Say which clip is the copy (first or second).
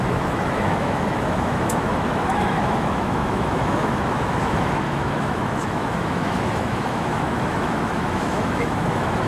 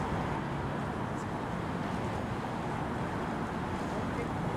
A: first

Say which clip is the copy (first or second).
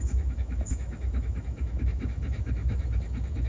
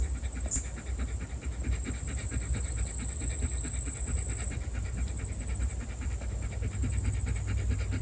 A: first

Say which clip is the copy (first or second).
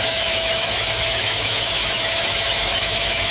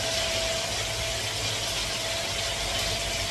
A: first